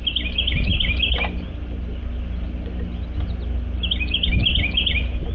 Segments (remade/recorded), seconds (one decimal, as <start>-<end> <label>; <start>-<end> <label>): 0.0-5.3 recorded